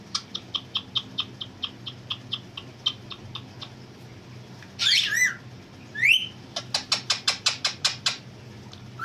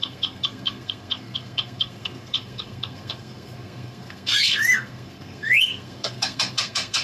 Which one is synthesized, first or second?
second